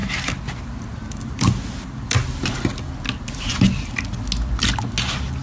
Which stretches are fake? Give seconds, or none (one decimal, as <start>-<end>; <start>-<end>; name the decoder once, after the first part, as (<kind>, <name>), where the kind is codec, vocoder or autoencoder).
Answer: none